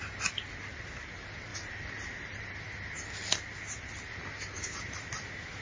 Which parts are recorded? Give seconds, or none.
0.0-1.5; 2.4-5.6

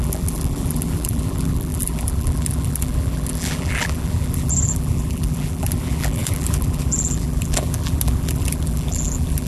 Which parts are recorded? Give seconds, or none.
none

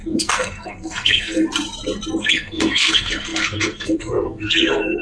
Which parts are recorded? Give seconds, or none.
1.4-2.2

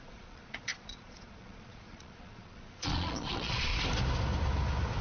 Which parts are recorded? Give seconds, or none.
3.7-5.0

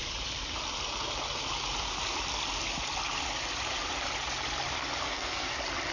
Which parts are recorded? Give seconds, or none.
0.0-5.0; 5.5-5.9

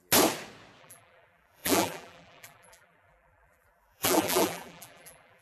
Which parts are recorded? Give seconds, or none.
0.0-0.8